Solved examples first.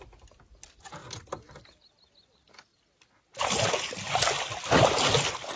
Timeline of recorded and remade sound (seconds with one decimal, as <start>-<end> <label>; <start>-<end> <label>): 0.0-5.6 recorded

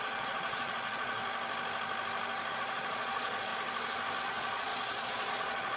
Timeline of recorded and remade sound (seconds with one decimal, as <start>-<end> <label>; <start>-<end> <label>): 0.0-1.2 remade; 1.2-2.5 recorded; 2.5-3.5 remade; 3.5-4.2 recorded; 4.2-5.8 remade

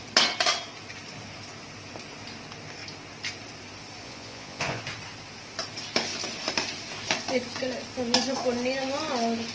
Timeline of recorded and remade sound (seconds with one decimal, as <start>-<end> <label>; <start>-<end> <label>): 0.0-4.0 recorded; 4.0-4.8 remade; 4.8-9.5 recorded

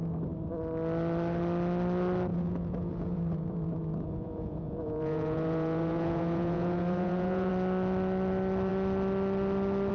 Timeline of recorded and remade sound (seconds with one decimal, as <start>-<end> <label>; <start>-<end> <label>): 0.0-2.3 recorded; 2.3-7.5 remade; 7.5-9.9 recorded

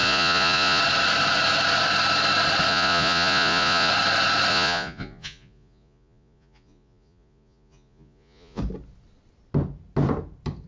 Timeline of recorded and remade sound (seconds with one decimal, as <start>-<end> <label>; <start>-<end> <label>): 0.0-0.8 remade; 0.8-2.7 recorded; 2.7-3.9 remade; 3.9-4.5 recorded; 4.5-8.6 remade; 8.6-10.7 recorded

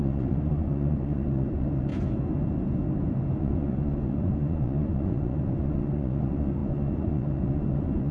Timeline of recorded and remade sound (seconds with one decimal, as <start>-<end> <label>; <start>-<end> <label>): 0.0-1.9 remade; 1.9-3.4 recorded; 3.4-8.1 remade

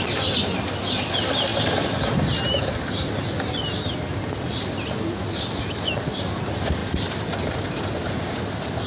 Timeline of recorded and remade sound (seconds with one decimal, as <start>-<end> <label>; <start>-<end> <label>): 0.0-8.9 recorded